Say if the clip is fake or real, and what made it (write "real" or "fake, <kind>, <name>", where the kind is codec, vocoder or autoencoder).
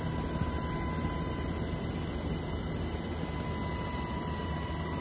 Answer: real